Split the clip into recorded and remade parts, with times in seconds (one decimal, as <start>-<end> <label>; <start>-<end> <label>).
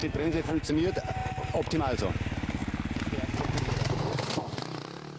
0.0-0.7 remade; 0.7-5.2 recorded